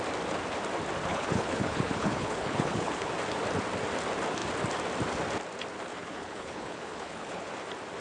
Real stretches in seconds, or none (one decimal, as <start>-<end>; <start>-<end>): 0.0-1.1; 3.1-5.9; 7.5-8.0

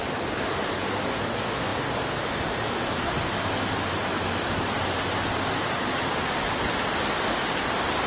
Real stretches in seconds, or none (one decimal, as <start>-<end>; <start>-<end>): 0.0-8.1

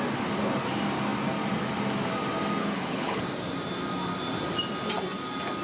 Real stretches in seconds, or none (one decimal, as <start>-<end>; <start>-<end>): 0.0-2.6; 3.2-5.6

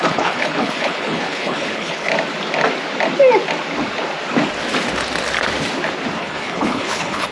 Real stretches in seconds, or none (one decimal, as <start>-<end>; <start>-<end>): 2.1-6.2

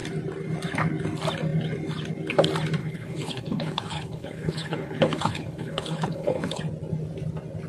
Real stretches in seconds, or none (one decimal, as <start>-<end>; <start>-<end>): 0.0-2.8; 6.6-7.7

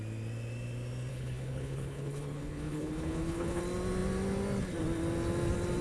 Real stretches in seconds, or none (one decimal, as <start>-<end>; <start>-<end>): 0.0-1.1; 3.6-5.8

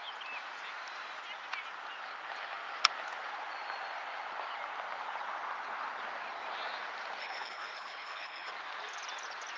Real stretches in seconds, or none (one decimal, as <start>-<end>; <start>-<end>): 0.0-7.2; 8.5-9.6